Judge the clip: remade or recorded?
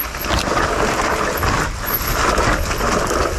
recorded